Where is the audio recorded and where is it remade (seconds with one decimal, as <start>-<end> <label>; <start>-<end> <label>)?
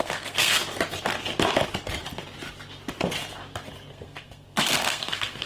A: 0.0-0.6 remade; 0.6-3.9 recorded; 3.9-5.5 remade